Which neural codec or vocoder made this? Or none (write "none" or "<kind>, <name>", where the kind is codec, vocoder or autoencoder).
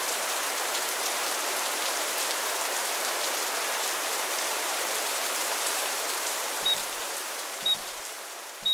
vocoder, BigVGAN v2